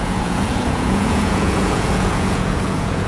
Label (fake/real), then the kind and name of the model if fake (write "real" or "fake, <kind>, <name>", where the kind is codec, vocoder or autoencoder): fake, vocoder, Vocos